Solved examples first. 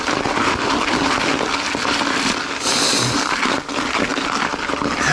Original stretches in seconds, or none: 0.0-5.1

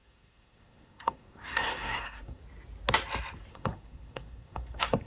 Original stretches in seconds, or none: 2.4-3.5

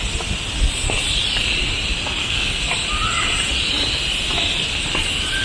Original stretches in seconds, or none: 0.0-2.2; 2.7-5.4

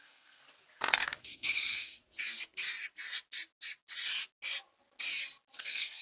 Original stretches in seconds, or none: 0.4-1.2; 2.0-5.6

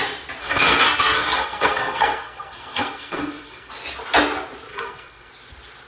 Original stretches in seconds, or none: 0.0-0.4; 3.7-4.7; 5.3-5.9